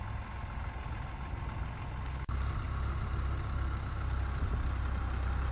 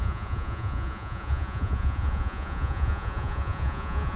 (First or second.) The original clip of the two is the first